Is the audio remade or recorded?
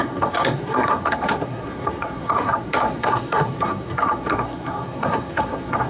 remade